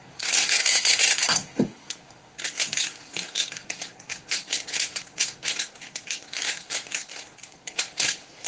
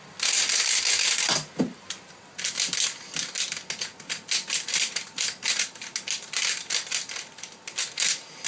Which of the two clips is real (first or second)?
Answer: second